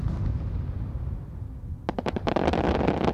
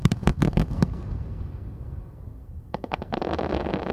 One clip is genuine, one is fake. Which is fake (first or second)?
second